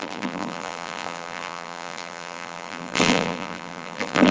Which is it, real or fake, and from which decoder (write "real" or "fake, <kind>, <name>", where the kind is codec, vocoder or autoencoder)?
fake, vocoder, BigVGAN v2